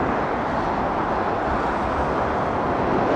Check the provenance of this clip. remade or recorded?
recorded